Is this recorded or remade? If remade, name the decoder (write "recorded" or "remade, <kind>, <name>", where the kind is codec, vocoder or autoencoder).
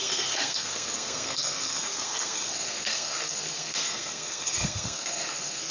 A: remade, codec, SNAC